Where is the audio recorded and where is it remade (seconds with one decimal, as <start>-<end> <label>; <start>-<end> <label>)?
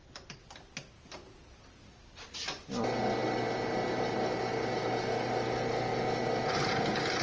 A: 0.0-7.2 recorded